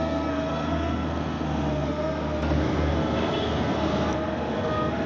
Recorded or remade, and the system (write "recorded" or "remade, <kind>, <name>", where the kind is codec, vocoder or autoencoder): remade, codec, SNAC